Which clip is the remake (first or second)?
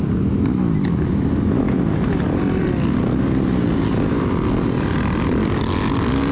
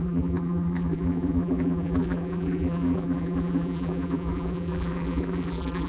second